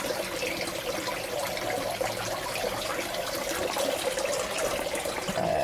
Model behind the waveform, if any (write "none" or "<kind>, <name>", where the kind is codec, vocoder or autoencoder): none